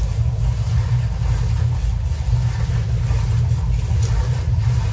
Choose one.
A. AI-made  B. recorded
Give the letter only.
B